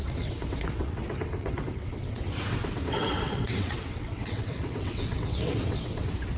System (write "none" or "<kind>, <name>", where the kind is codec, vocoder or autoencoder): vocoder, WaveNeXt